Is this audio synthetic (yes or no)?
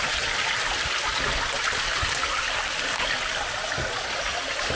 no